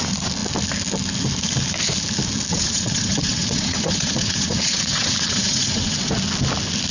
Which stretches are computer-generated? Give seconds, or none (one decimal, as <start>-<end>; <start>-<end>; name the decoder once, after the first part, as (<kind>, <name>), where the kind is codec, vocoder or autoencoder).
2.5-6.1 (vocoder, WaveNeXt)